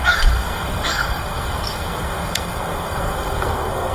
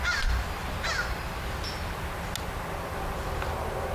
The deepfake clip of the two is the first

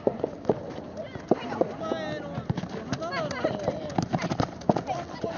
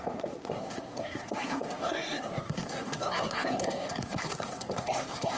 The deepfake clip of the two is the second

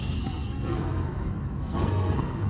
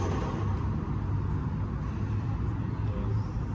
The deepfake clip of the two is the first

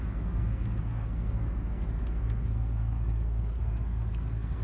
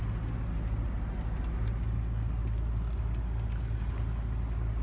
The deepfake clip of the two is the first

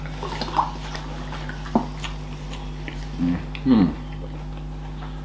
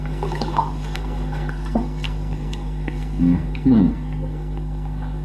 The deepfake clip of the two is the second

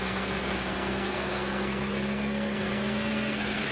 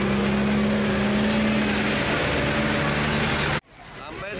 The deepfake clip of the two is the first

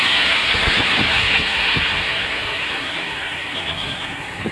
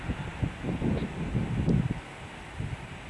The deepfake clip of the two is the first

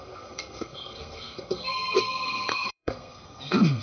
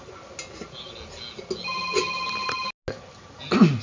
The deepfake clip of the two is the first